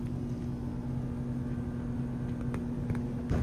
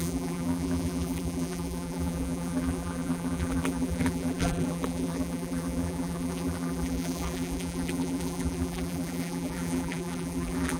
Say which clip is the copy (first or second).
second